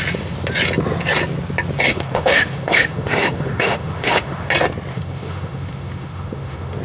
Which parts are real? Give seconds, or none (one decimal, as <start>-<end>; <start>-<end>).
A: 0.0-1.9; 4.5-4.9

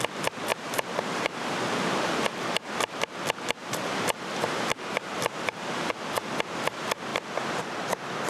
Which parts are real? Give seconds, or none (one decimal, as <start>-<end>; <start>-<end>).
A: 0.0-0.5; 2.2-3.6; 5.9-8.3